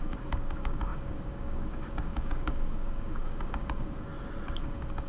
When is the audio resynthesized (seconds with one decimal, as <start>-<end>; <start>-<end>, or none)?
0.0-4.1; 4.6-5.1